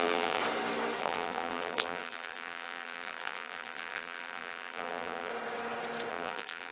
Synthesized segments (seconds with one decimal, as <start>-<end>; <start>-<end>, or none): 0.0-0.4; 1.0-5.3; 6.1-6.7